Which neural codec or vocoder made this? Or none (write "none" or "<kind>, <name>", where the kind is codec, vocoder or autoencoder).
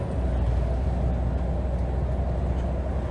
none